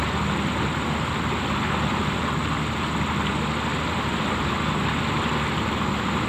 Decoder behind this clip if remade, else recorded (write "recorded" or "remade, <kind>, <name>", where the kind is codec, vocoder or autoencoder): remade, vocoder, BigVGAN v2